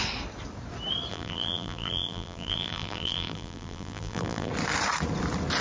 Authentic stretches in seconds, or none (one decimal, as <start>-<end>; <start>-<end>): 0.0-1.1; 4.5-5.6